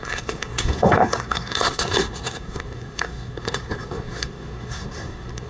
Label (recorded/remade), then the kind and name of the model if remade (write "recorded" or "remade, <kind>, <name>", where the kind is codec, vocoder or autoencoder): remade, codec, SNAC